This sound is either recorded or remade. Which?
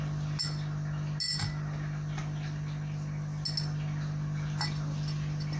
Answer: recorded